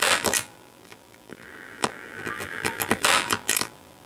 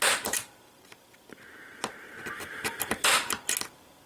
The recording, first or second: second